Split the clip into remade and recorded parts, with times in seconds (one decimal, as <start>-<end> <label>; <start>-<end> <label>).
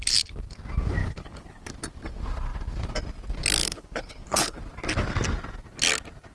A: 0.0-1.0 recorded; 1.0-1.7 remade; 1.7-3.6 recorded; 3.6-4.6 remade; 4.6-6.3 recorded